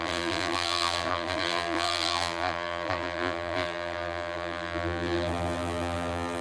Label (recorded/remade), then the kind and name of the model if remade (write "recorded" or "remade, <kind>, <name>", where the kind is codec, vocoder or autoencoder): remade, vocoder, BigVGAN v2